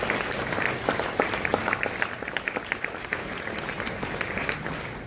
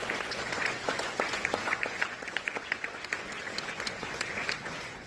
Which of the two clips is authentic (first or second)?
first